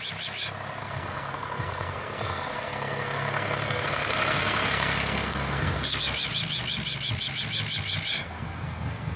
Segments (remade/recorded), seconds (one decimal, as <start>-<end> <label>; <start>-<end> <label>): 0.0-0.8 recorded; 0.8-6.0 remade; 6.0-8.2 recorded; 8.2-9.2 remade